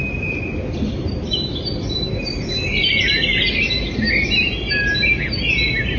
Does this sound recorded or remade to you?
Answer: recorded